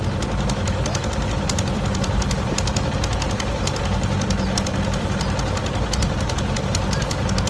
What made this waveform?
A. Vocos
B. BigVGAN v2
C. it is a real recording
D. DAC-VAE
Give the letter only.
C